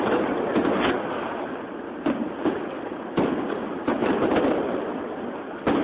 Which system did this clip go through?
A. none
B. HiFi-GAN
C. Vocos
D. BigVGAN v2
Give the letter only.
A